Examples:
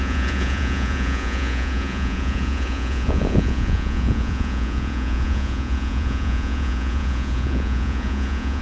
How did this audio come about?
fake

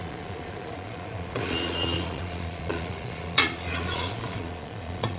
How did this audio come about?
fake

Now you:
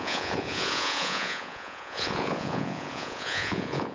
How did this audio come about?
fake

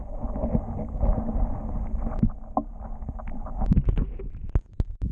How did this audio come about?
real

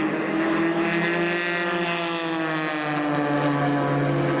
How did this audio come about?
real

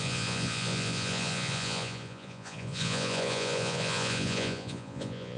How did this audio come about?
fake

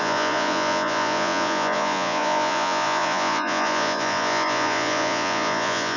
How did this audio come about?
fake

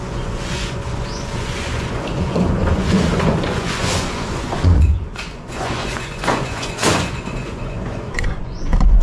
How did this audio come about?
fake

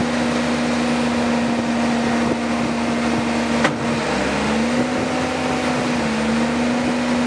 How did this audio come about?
real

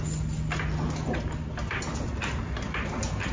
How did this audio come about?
real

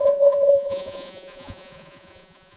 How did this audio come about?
fake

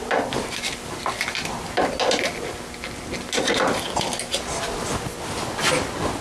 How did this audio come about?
real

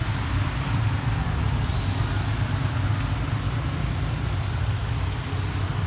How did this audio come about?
real